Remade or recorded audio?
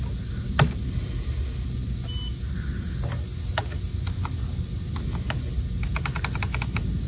recorded